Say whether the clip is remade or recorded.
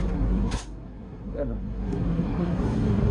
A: remade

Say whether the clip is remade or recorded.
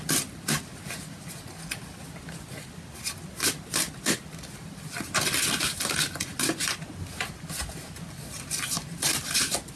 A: recorded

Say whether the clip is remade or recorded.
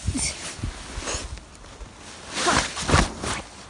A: recorded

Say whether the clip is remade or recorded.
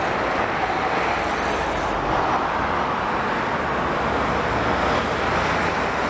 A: recorded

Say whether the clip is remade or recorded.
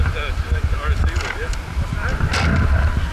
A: recorded